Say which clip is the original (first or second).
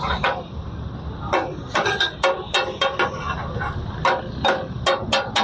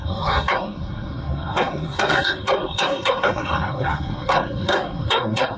first